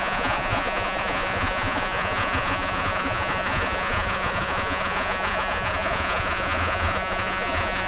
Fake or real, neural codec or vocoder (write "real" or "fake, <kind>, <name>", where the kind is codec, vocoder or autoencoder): fake, vocoder, Vocos